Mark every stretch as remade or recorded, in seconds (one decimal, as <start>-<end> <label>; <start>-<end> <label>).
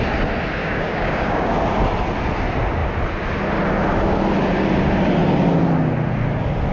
0.0-0.6 recorded; 0.6-1.5 remade; 1.5-6.7 recorded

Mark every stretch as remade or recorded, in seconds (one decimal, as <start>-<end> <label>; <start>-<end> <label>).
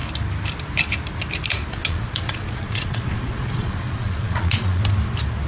0.0-1.8 recorded; 1.8-4.8 remade; 4.8-5.5 recorded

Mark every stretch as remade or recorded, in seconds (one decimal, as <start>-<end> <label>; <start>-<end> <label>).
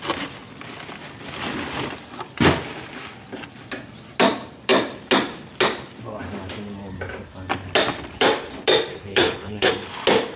0.0-8.9 recorded; 8.9-9.7 remade; 9.7-10.4 recorded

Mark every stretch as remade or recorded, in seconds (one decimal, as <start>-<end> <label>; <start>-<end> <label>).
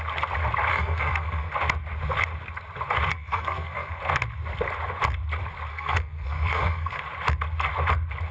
0.0-0.7 recorded; 0.7-1.5 remade; 1.5-3.1 recorded; 3.1-4.0 remade; 4.0-5.7 recorded; 5.7-7.0 remade; 7.0-8.3 recorded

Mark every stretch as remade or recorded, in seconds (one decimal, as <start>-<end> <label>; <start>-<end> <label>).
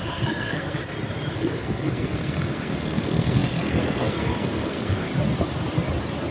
0.0-0.8 remade; 0.8-1.3 recorded; 1.3-5.1 remade; 5.1-6.3 recorded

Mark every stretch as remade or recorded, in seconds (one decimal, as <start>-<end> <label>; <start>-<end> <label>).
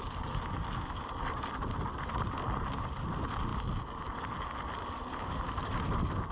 0.0-6.3 recorded